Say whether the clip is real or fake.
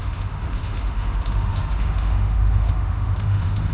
fake